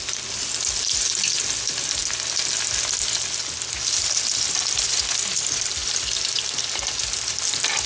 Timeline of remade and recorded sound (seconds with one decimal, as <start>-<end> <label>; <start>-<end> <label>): 0.0-7.9 recorded